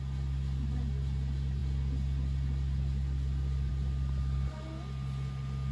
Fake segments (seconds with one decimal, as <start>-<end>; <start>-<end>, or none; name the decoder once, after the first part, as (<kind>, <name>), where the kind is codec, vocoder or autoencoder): none